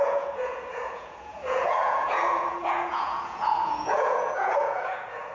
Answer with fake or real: fake